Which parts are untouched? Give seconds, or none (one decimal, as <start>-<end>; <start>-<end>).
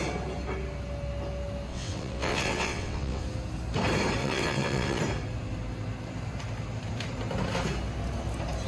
0.0-1.7; 3.2-4.2; 5.0-8.7